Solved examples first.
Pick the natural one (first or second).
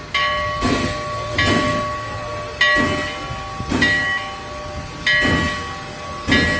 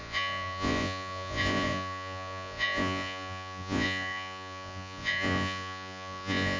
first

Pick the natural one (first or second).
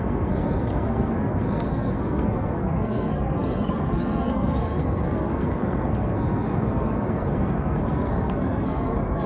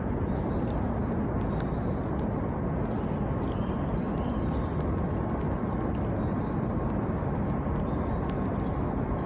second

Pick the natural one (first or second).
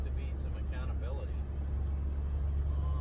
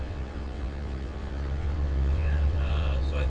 first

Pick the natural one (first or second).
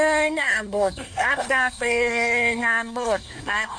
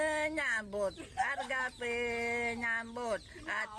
second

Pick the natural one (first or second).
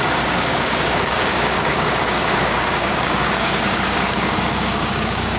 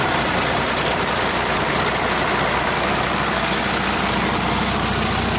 second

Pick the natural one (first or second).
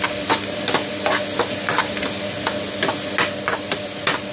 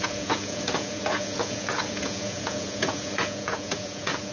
first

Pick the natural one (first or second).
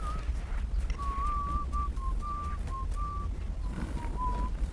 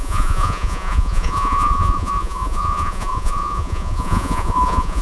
first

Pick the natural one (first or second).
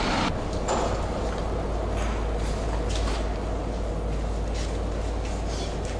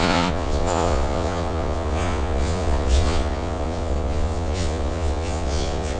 first